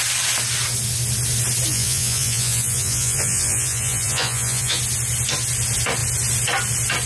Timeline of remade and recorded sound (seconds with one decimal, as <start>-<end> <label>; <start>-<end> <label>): 0.0-1.7 recorded; 1.7-4.8 remade; 4.8-7.1 recorded